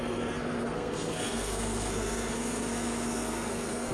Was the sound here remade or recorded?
remade